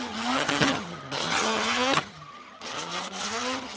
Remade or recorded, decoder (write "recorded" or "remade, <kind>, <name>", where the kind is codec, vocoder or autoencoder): remade, vocoder, HiFi-GAN